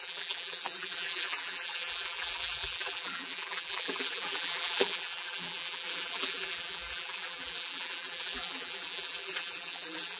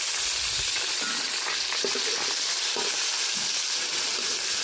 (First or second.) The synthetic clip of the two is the first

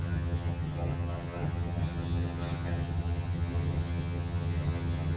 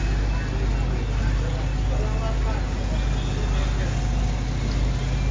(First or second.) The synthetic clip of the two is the first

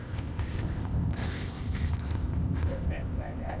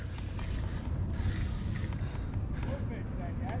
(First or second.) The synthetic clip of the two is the first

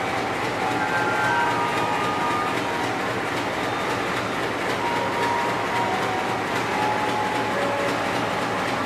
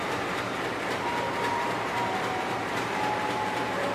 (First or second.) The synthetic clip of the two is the second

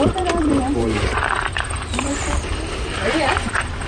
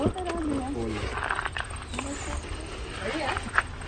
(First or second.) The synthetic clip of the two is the first